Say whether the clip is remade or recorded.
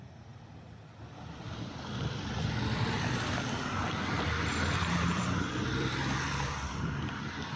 remade